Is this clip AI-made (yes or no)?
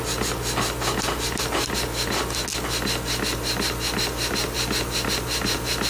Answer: no